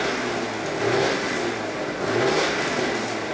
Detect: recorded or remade recorded